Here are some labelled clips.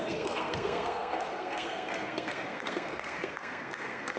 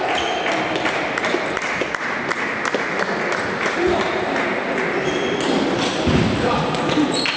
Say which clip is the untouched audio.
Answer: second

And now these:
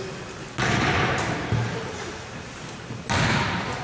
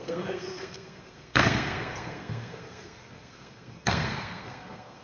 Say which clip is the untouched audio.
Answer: first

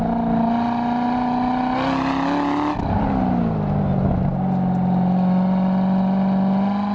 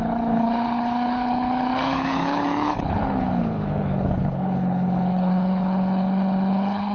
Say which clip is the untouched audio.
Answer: first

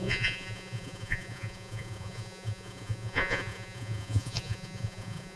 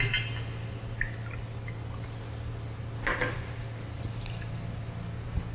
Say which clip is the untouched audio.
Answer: second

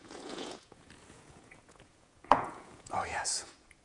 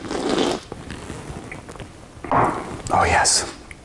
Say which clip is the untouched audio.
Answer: second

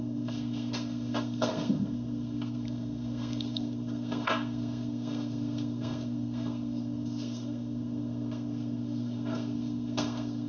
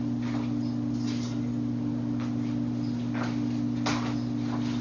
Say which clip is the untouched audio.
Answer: second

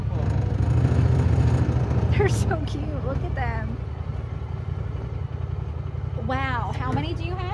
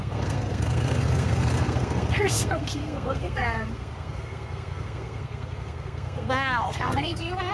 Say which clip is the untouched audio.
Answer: first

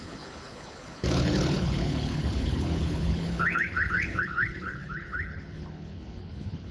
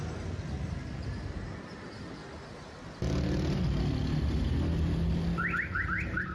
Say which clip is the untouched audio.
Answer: second